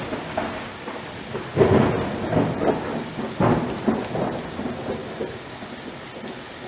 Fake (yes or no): no